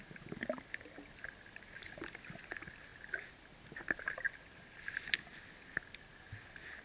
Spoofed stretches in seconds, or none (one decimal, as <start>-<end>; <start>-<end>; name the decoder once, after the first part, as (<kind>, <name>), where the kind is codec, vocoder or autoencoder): none